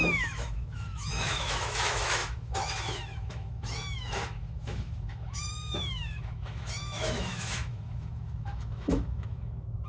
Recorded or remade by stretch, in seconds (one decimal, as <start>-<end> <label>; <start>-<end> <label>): 0.0-9.9 remade